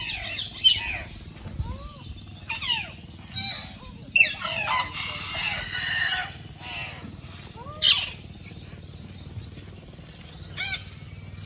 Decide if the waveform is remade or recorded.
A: recorded